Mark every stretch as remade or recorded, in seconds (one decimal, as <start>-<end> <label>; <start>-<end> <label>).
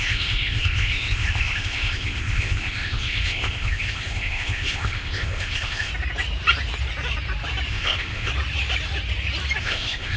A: 0.0-5.9 remade; 5.9-7.7 recorded; 7.7-8.3 remade; 8.3-9.6 recorded; 9.6-10.2 remade